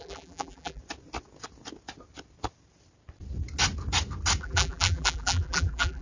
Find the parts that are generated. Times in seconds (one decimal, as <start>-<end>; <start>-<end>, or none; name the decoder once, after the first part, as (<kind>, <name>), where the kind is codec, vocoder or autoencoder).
0.0-0.8 (vocoder, BigVGAN v2); 4.4-6.0